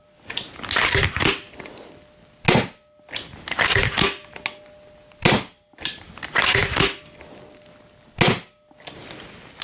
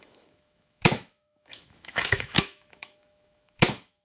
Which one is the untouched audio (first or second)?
first